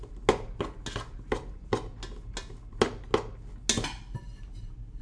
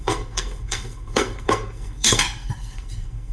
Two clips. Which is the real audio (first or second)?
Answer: first